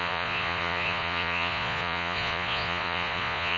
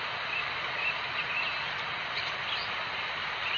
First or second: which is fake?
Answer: first